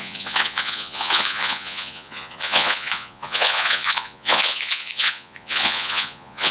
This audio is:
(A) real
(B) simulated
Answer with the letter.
B